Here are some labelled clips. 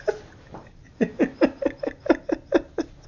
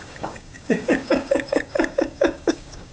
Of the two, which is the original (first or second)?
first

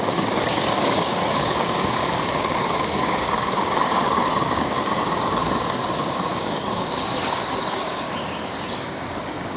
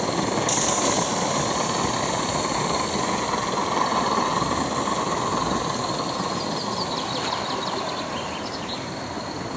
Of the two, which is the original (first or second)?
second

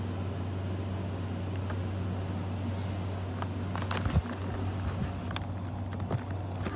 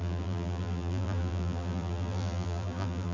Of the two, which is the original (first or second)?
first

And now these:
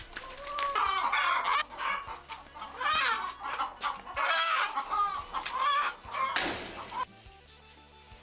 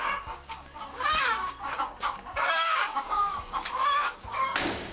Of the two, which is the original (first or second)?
first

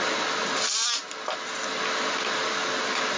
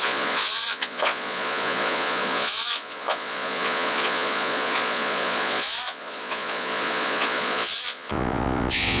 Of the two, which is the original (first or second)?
first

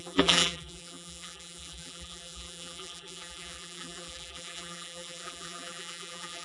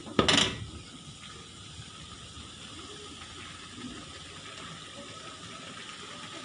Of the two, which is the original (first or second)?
second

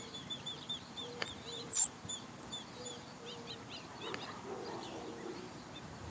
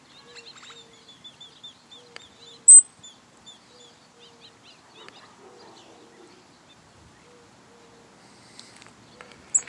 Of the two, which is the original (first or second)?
second